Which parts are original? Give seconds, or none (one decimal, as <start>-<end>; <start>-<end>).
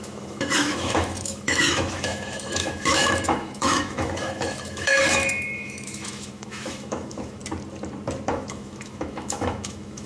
7.4-8.3